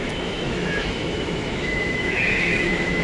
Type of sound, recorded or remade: remade